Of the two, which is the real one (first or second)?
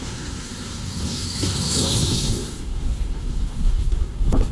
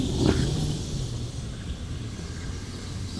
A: second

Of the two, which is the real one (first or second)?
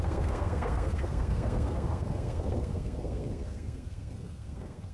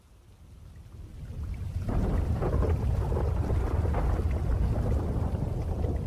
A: second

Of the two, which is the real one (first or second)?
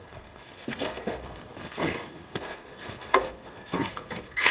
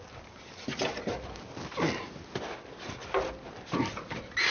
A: second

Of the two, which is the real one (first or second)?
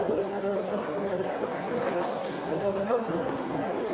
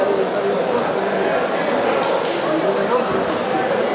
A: second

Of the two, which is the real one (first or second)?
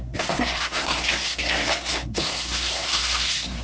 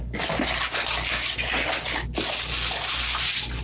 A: second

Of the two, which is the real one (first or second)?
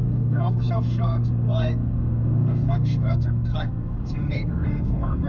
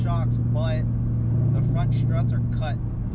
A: second